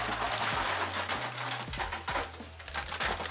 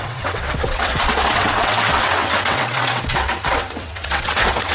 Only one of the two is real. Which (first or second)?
first